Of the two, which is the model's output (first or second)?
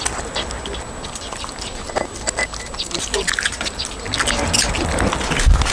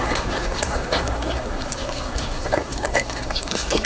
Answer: second